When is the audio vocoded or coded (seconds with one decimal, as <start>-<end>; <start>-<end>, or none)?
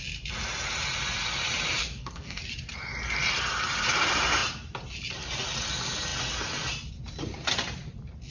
1.8-2.5